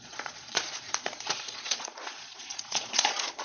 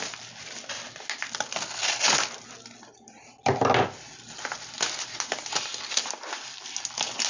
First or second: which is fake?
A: first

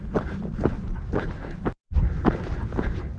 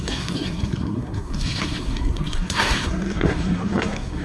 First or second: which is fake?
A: second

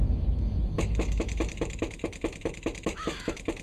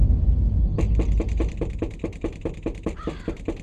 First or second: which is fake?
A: first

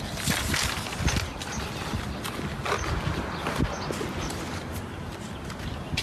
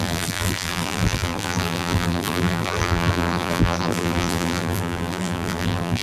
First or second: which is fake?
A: second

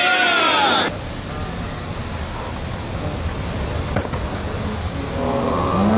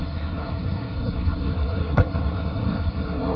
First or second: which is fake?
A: second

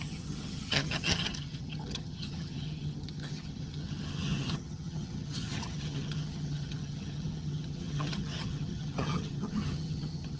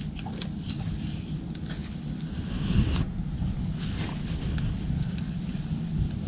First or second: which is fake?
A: first